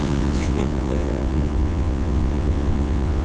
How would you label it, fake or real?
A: fake